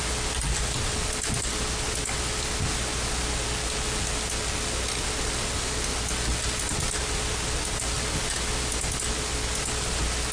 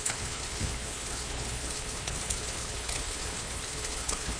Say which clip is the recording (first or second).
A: first